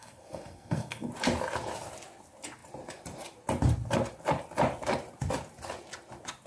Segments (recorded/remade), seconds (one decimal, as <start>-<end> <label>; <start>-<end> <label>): 0.0-1.1 remade; 1.1-6.5 recorded